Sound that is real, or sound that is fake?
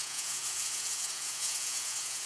fake